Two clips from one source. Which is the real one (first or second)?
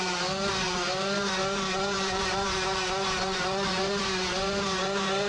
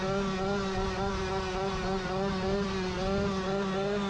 second